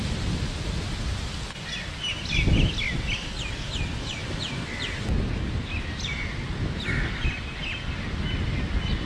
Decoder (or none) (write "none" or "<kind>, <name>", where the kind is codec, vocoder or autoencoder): none